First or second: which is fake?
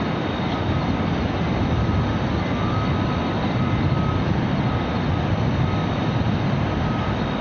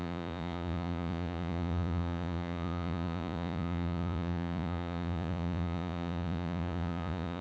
second